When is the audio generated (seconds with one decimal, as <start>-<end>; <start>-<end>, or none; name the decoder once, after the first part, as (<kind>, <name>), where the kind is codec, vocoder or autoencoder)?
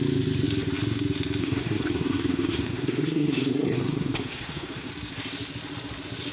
1.4-4.9 (codec, SNAC)